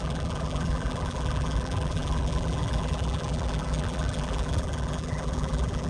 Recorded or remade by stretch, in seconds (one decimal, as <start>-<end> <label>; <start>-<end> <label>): 0.0-5.9 remade